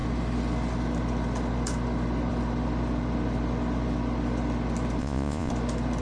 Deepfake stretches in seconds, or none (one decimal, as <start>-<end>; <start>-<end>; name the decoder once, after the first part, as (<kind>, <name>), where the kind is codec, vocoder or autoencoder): 5.0-5.5 (vocoder, Vocos)